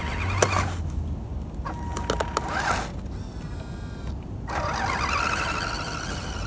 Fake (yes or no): no